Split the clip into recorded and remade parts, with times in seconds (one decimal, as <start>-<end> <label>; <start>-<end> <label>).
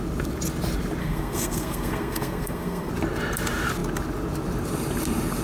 0.0-1.0 recorded; 1.0-2.9 remade; 2.9-5.4 recorded